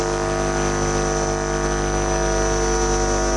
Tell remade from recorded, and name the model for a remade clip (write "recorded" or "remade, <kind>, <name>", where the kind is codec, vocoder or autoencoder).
recorded